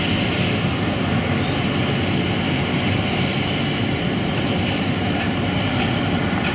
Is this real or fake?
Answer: real